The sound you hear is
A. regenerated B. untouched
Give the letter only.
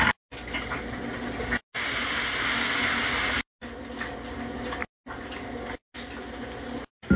B